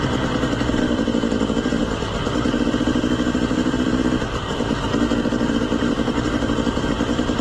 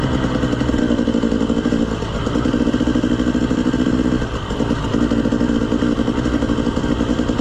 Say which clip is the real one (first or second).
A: second